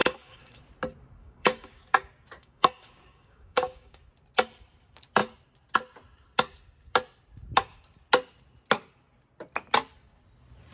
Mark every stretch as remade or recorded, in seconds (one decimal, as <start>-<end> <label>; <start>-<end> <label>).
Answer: 0.0-0.6 remade; 0.6-1.2 recorded; 1.2-1.8 remade; 1.8-2.4 recorded; 2.4-4.0 remade; 4.0-10.7 recorded